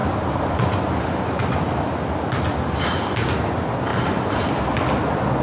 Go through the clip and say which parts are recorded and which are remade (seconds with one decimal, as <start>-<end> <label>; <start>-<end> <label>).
0.0-5.4 recorded